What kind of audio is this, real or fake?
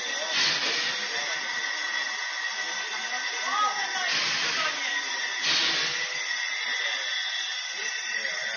real